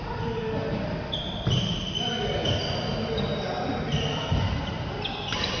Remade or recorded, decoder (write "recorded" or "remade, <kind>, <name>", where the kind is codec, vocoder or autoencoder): recorded